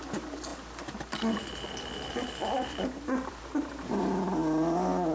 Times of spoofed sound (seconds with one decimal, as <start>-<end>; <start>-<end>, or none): 2.4-4.2